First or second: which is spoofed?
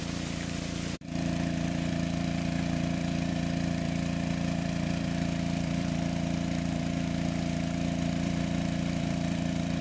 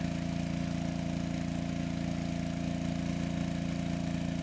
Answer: first